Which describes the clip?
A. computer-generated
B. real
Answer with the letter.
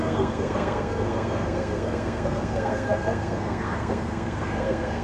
A